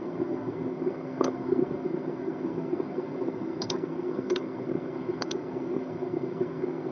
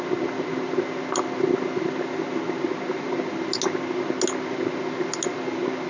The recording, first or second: second